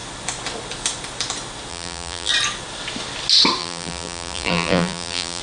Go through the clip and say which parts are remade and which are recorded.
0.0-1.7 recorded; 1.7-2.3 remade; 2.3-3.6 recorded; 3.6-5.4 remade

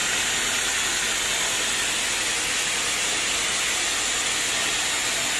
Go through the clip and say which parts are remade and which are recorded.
0.0-5.4 recorded

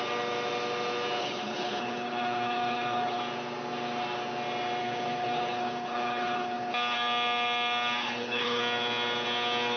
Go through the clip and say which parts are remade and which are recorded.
0.0-1.2 recorded; 1.2-3.2 remade; 3.2-4.8 recorded; 4.8-6.7 remade; 6.7-8.0 recorded; 8.0-8.6 remade; 8.6-9.8 recorded

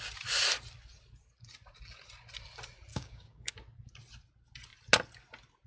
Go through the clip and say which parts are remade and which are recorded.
0.0-2.9 recorded; 2.9-3.5 remade; 3.5-5.7 recorded

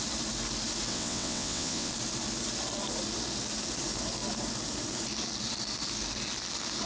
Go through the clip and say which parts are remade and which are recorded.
0.0-0.9 recorded; 0.9-1.9 remade; 1.9-6.9 recorded